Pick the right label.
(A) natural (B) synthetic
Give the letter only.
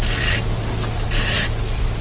A